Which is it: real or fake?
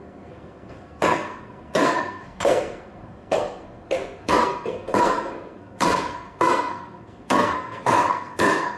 fake